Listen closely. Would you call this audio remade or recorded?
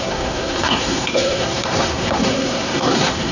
remade